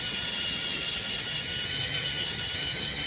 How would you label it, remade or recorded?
remade